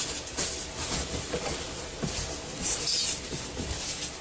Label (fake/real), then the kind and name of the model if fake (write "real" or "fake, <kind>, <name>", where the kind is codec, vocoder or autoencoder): real